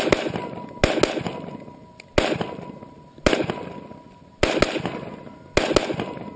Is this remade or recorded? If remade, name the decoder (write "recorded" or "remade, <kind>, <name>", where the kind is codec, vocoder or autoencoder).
recorded